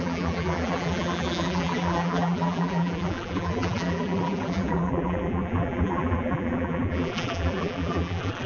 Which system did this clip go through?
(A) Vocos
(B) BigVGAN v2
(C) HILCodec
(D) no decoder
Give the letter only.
B